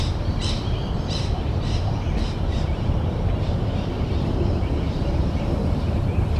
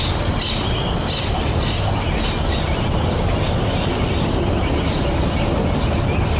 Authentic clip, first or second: second